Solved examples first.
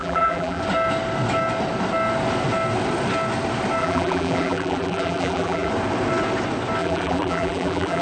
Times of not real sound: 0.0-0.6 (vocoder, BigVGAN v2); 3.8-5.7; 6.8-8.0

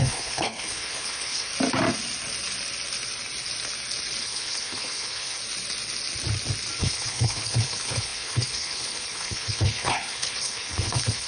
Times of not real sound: 0.0-1.5 (codec, HILCodec); 4.2-5.4; 6.8-11.3

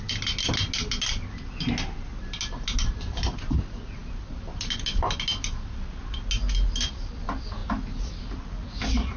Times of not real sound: none